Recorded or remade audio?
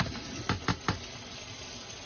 recorded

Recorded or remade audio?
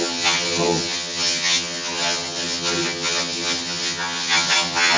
remade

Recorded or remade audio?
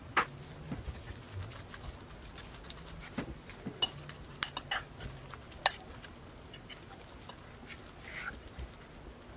recorded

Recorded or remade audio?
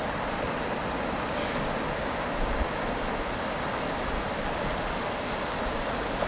recorded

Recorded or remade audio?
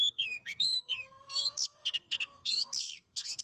remade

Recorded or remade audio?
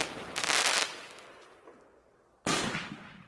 recorded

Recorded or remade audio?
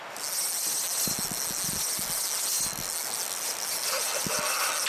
recorded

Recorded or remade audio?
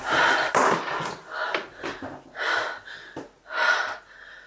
recorded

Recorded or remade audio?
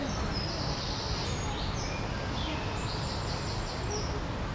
recorded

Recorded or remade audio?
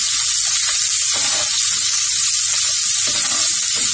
recorded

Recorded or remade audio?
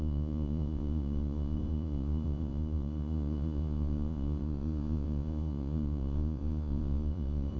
remade